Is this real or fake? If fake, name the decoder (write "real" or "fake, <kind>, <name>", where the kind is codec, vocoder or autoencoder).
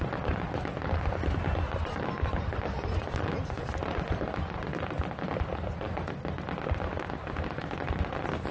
real